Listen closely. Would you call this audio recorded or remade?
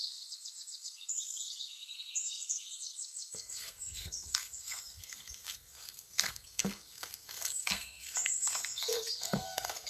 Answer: remade